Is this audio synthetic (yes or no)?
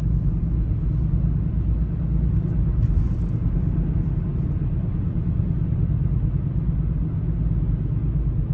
no